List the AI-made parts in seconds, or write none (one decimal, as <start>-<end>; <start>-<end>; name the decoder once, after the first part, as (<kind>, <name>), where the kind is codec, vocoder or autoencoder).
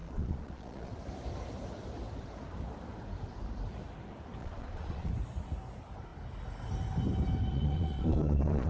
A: 0.0-0.9 (vocoder, Vocos); 4.4-5.1; 7.5-8.7